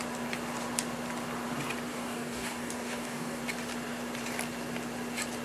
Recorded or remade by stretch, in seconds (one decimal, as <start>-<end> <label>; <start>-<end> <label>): 0.0-1.9 recorded; 1.9-3.4 remade; 3.4-5.4 recorded

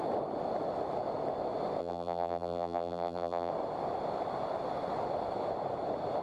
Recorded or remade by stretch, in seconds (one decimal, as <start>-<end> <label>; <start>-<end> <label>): 0.0-1.8 recorded; 1.8-3.5 remade; 3.5-6.2 recorded

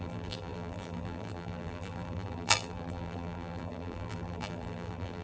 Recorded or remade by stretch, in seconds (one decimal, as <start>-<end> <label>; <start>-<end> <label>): 0.0-5.2 remade